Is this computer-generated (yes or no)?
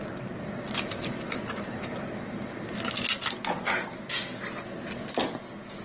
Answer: no